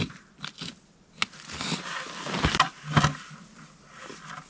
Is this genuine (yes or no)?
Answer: yes